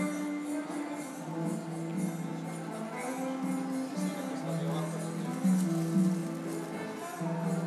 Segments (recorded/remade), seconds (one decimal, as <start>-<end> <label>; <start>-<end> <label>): 0.0-7.7 recorded